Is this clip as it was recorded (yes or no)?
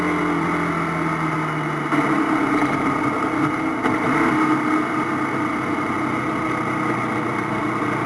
yes